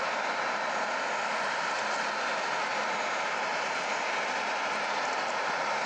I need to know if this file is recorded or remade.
recorded